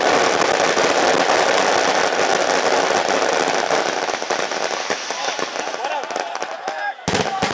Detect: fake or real real